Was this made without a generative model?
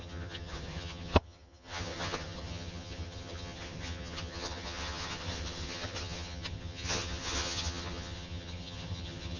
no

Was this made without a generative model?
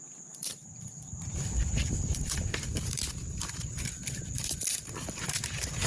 no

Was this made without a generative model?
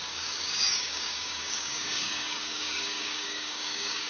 no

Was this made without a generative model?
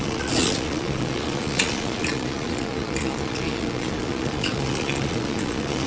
no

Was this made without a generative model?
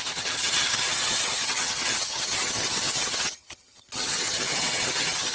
no